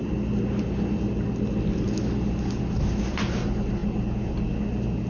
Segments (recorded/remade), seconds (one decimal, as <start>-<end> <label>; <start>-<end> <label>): 0.0-5.1 recorded